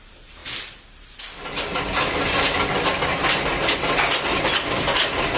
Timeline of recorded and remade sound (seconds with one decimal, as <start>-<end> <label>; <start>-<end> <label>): 0.0-5.4 recorded